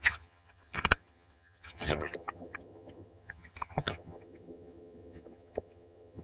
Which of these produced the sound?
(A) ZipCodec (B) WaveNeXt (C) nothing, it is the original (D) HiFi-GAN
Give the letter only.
D